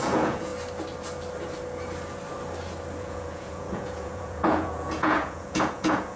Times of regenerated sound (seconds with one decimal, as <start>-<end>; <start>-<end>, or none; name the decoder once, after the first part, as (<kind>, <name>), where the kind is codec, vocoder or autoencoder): 0.0-0.5 (vocoder, Vocos); 3.0-6.2